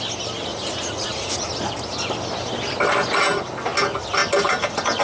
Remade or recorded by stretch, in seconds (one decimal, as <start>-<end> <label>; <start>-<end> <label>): 0.0-0.5 recorded; 0.5-1.5 remade; 1.5-5.0 recorded